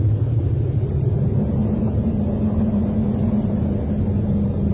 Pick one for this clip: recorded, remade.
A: recorded